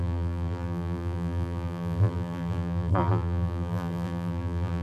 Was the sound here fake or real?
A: fake